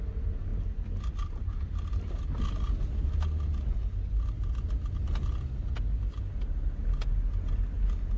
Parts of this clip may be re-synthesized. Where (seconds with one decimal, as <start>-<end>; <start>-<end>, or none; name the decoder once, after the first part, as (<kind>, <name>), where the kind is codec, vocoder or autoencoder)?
none